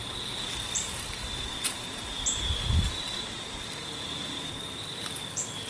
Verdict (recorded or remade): recorded